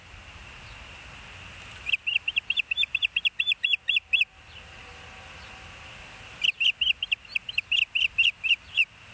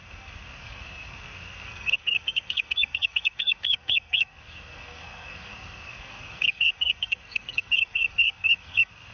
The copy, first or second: second